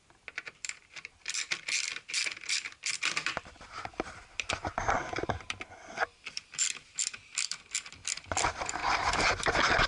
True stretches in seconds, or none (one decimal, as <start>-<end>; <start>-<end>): 8.8-9.9